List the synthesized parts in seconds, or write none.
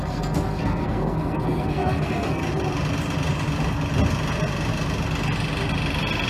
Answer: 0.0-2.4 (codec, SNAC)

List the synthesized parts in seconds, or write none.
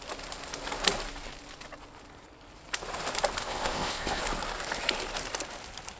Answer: 3.4-4.2 (codec, ZipCodec)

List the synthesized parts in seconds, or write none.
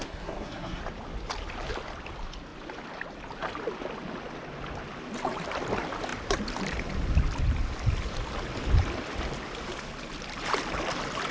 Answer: 0.0-0.8 (codec, SNAC)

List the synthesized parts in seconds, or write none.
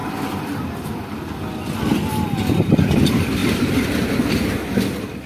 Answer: 0.0-0.7 (vocoder, BigVGAN v2)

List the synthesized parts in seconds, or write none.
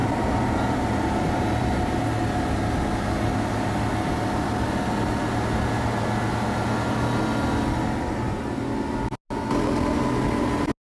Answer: 0.0-1.8 (vocoder, BigVGAN v2)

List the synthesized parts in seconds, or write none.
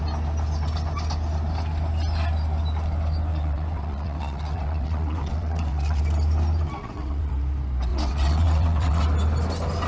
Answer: 3.3-6.0 (vocoder, WaveNeXt); 6.8-7.3; 7.9-9.0